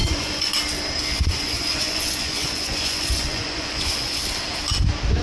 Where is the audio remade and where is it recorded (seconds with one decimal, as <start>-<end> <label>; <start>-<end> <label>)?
0.0-0.5 remade; 0.5-1.1 recorded; 1.1-4.2 remade; 4.2-5.2 recorded